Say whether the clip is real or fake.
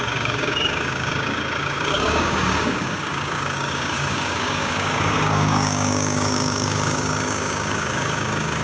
fake